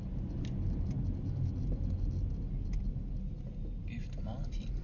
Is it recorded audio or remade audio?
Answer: recorded